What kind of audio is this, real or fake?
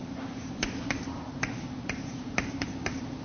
fake